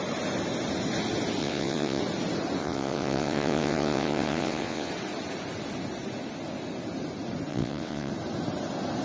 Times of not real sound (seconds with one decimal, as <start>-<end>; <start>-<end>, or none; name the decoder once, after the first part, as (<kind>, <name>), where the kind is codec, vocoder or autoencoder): 1.4-2.0 (vocoder, WaveNeXt); 2.6-4.9; 7.5-8.1